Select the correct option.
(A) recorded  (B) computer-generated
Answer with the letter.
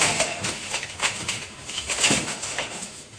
B